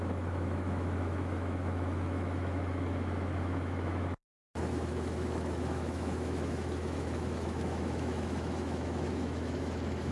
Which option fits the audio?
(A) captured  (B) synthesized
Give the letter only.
B